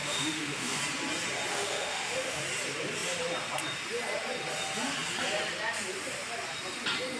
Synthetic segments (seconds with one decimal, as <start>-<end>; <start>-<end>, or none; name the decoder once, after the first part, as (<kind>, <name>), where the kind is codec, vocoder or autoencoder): 0.0-0.8 (autoencoder, DAC-VAE); 1.5-2.4